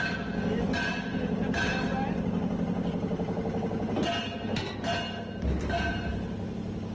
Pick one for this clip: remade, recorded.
recorded